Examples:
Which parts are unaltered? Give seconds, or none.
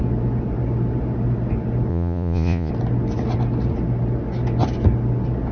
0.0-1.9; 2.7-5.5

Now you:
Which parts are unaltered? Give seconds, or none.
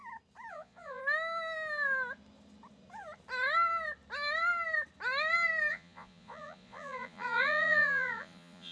0.0-0.5; 1.0-5.7